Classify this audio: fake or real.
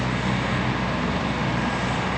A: real